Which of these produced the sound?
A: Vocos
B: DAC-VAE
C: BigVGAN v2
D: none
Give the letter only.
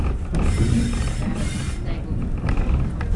D